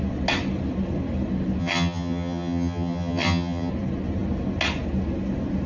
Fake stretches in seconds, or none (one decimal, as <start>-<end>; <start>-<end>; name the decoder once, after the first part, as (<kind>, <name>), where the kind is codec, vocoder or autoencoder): 1.6-3.7 (vocoder, HiFi-GAN)